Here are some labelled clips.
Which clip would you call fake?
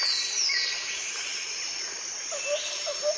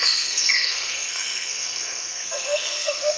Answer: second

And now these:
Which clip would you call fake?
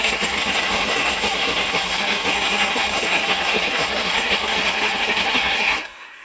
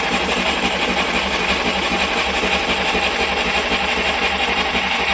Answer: first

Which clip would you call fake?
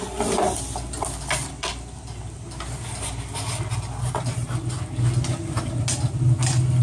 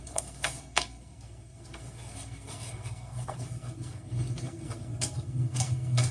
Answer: second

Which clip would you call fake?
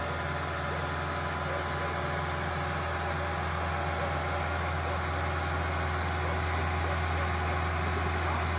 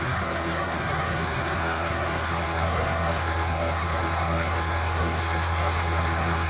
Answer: second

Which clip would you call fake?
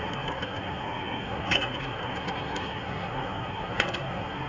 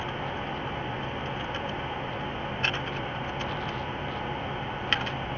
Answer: first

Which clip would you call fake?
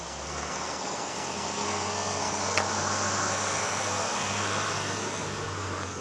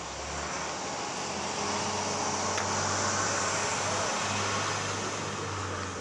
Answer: first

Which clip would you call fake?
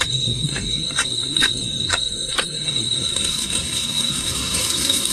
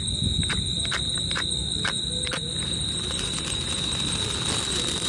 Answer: first